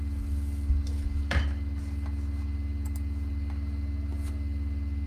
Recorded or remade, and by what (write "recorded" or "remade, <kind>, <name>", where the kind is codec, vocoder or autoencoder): recorded